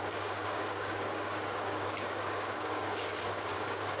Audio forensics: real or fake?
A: fake